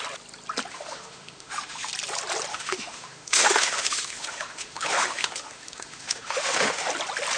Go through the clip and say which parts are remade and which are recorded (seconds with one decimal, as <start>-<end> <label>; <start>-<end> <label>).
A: 0.0-0.7 recorded; 0.7-1.9 remade; 1.9-2.5 recorded; 2.5-6.9 remade; 6.9-7.4 recorded

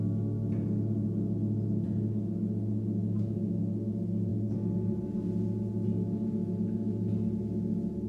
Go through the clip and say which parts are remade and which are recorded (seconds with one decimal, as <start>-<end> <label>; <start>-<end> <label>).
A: 0.0-3.0 recorded; 3.0-3.6 remade; 3.6-8.1 recorded

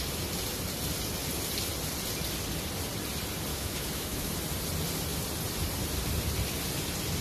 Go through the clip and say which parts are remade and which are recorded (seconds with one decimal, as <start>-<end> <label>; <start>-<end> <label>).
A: 0.0-3.5 recorded; 3.5-4.3 remade; 4.3-7.2 recorded

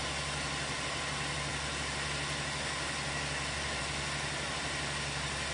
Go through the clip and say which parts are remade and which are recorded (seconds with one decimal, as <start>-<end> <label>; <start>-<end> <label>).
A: 0.0-5.5 recorded

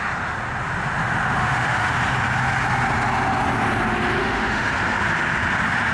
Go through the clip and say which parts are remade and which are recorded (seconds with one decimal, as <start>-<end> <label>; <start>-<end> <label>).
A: 0.0-1.4 recorded; 1.4-1.9 remade; 1.9-4.2 recorded; 4.2-4.7 remade; 4.7-5.9 recorded

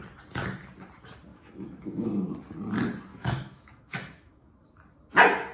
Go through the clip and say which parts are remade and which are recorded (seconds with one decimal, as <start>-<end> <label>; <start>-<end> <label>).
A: 0.0-1.3 recorded; 1.3-2.3 remade; 2.3-3.1 recorded; 3.1-4.5 remade; 4.5-5.5 recorded